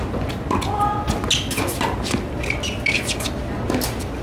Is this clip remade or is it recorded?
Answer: recorded